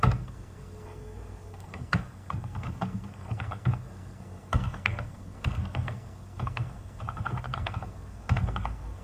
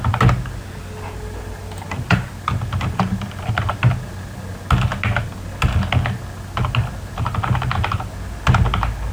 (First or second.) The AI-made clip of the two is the first